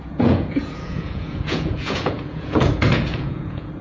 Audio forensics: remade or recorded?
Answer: remade